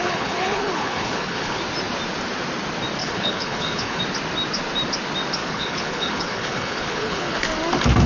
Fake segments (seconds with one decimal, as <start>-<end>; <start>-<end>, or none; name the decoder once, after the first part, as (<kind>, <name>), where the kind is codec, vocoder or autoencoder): 0.0-1.6 (codec, HILCodec); 3.0-4.0; 5.4-7.4